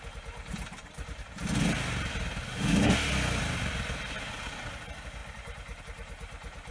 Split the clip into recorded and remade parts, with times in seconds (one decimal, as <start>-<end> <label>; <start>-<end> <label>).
0.0-2.5 recorded; 2.5-3.1 remade; 3.1-6.7 recorded